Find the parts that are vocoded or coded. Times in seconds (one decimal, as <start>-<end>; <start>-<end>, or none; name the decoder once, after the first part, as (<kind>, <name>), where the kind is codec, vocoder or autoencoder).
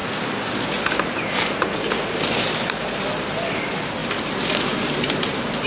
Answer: none